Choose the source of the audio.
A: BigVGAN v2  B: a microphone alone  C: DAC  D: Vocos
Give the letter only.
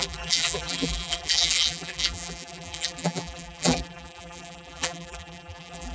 A